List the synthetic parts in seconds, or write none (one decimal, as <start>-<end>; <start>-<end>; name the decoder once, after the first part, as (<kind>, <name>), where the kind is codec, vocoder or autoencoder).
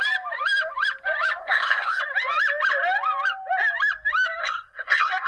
1.4-2.0 (codec, SNAC); 4.4-5.3